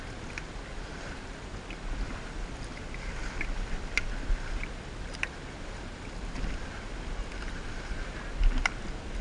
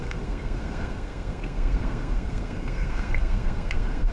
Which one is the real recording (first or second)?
first